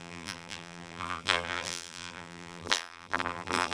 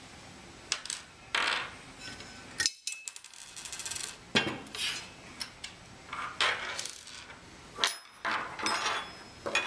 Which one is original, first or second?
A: second